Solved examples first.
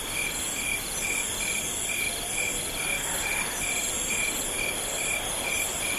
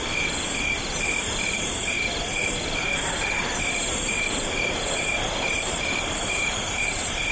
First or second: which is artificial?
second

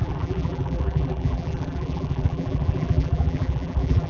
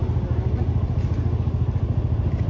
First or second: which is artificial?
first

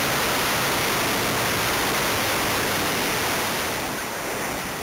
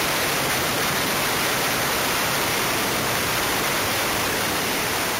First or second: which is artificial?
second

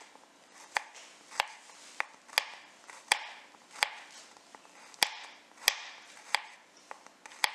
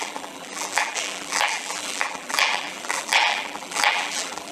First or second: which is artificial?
second